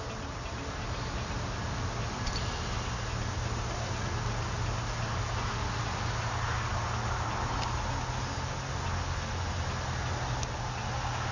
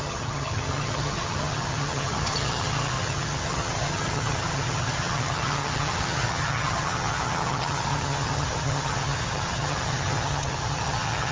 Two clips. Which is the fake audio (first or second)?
second